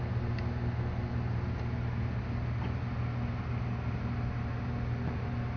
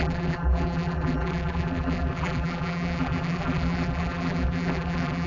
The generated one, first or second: second